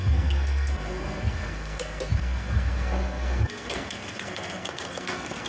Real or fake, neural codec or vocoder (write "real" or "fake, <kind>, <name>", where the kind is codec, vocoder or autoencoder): fake, codec, SNAC